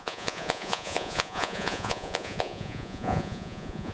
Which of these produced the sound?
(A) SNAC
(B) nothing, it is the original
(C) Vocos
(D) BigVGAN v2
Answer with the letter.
C